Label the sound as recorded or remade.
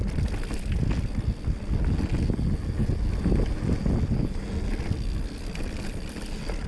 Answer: recorded